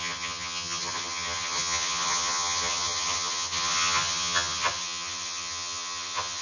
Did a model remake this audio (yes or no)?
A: yes